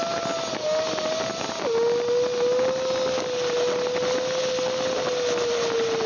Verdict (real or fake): real